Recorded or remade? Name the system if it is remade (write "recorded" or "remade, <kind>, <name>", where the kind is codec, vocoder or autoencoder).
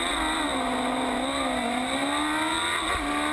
recorded